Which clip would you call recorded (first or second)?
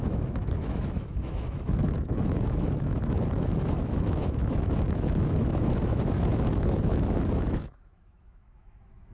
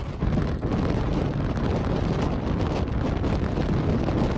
second